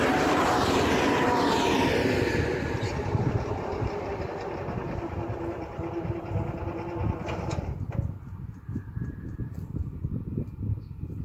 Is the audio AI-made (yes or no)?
no